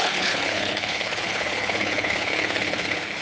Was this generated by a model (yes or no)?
yes